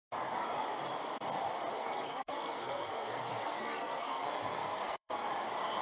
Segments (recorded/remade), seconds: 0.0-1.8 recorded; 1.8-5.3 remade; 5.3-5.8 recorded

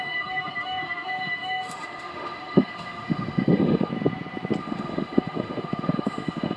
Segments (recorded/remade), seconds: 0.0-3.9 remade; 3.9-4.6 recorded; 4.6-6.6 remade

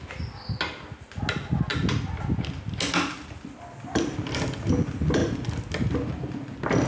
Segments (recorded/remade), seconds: 0.0-6.9 recorded